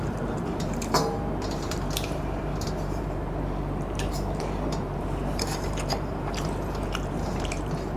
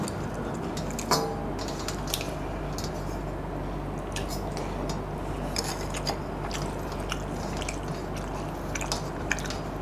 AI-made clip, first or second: first